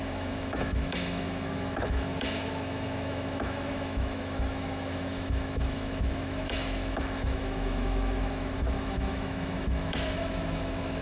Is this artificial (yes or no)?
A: yes